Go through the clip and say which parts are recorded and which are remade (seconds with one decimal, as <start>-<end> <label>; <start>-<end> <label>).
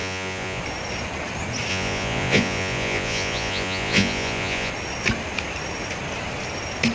0.0-0.6 remade; 0.6-1.7 recorded; 1.7-4.7 remade; 4.7-6.9 recorded